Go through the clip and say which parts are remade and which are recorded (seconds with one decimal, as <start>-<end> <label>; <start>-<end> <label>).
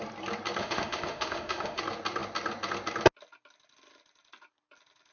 0.0-0.6 recorded; 0.6-1.8 remade; 1.8-5.1 recorded